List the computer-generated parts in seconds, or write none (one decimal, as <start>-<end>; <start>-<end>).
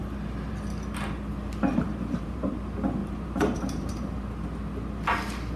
1.7-2.5; 3.0-4.2